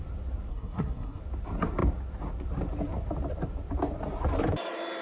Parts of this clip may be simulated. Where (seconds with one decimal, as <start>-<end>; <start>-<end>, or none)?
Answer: 0.5-1.2